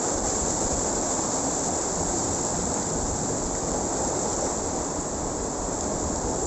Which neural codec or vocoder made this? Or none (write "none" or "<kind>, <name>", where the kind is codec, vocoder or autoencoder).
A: none